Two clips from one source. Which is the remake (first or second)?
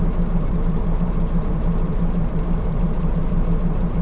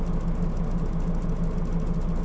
first